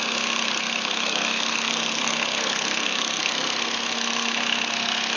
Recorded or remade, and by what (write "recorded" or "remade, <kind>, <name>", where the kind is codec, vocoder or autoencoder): remade, codec, SNAC